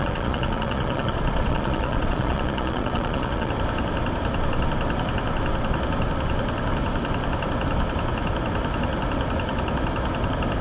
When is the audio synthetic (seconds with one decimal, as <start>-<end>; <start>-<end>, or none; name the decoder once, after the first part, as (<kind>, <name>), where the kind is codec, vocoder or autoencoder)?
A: 0.0-3.5 (vocoder, Vocos)